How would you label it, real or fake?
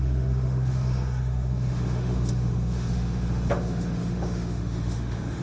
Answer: fake